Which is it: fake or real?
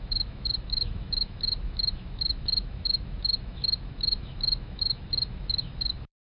fake